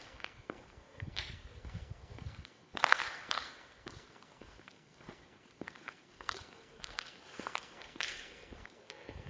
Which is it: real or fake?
fake